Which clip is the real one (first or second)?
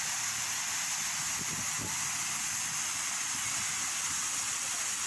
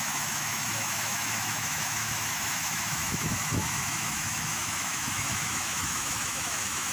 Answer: first